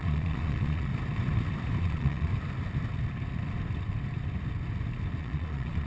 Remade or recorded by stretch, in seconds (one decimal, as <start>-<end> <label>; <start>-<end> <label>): 0.0-0.9 remade; 0.9-1.8 recorded; 1.8-2.3 remade; 2.3-5.2 recorded; 5.2-5.9 remade